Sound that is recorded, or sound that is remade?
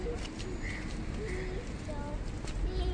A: recorded